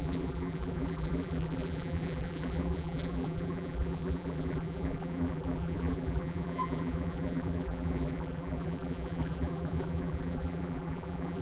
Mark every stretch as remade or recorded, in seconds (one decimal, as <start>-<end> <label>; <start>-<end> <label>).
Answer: 0.0-11.4 remade